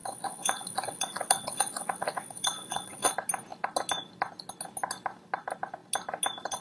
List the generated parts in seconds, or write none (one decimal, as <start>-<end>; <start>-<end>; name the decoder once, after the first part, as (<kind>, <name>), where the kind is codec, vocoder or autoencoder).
0.0-3.1 (vocoder, WaveNeXt)